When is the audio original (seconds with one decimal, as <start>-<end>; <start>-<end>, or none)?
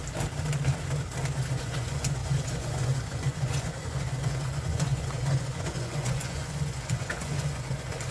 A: 0.0-1.5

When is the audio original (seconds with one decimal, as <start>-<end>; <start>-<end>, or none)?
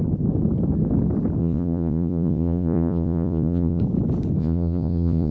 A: 0.0-1.4; 3.8-4.4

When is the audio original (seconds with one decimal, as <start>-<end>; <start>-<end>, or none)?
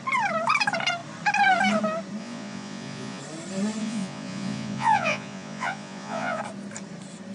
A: 0.0-2.2; 3.2-3.8; 6.4-7.3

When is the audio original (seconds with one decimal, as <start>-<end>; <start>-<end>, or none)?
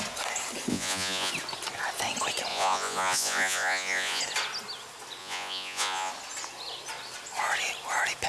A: 0.0-0.7; 1.3-2.5; 4.2-5.2; 6.1-8.3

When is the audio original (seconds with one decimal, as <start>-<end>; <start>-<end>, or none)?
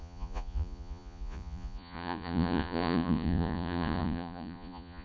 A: none